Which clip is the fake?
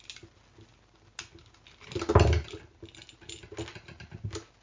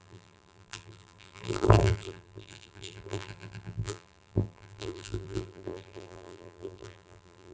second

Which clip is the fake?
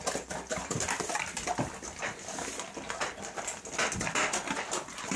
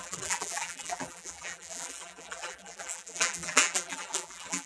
second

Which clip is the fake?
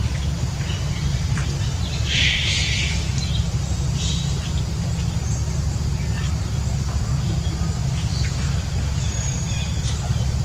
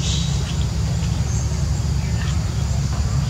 first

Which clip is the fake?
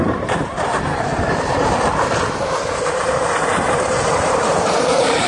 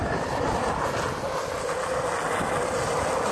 first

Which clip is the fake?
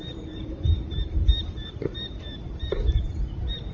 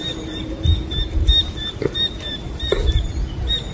first